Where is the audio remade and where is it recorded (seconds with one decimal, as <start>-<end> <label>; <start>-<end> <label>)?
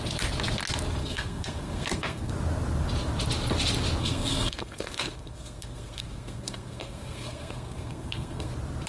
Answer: 0.0-1.0 recorded; 1.0-2.3 remade; 2.3-4.0 recorded; 4.0-8.5 remade; 8.5-8.9 recorded